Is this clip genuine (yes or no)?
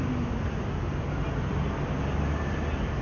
yes